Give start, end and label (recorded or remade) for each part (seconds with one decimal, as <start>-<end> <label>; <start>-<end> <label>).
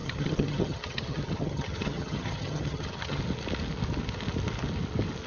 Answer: 0.0-3.2 remade; 3.2-5.3 recorded